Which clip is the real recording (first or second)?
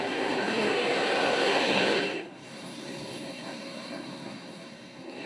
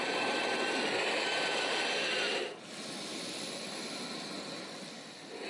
second